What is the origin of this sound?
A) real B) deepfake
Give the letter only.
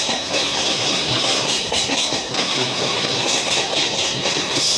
B